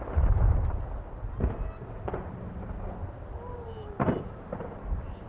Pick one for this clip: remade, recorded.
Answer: recorded